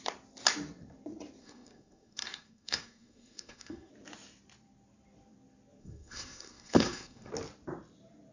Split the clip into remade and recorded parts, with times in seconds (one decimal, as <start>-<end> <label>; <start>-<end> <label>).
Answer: 0.0-1.4 recorded; 1.4-3.9 remade; 3.9-5.8 recorded; 5.8-7.3 remade; 7.3-8.3 recorded